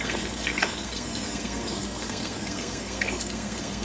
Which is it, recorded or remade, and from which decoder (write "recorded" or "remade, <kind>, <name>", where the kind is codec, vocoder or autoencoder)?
remade, codec, SNAC